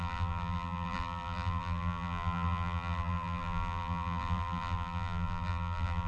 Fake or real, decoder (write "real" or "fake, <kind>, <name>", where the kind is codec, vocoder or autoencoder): fake, vocoder, BigVGAN v2